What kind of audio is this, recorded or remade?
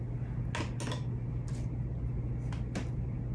recorded